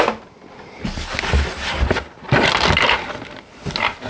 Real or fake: real